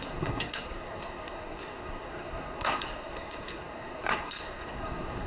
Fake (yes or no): yes